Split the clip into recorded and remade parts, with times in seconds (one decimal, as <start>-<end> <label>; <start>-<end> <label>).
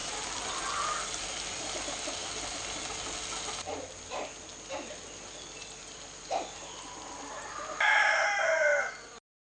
0.0-9.5 recorded